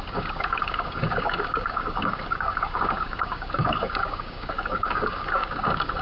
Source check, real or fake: fake